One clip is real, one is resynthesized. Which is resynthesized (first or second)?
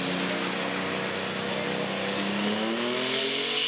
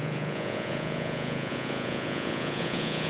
second